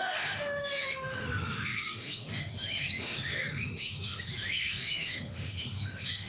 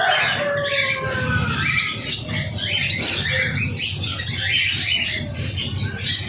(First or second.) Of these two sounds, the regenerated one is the first